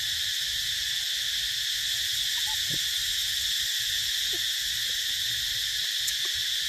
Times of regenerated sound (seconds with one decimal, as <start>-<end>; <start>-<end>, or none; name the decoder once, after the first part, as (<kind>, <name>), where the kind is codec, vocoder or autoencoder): none